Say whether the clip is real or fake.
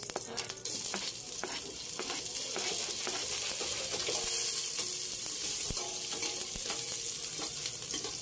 real